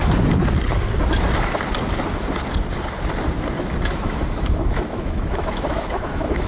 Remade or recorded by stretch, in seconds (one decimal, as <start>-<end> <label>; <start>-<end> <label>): 0.0-3.9 recorded; 3.9-6.5 remade